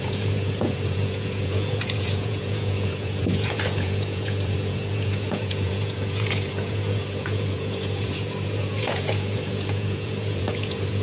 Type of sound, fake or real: fake